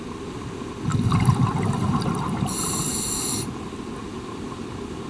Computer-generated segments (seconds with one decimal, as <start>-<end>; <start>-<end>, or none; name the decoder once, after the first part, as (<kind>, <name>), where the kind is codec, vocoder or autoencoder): none